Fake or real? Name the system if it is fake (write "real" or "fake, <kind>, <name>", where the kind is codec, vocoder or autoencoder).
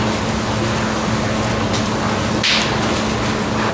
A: real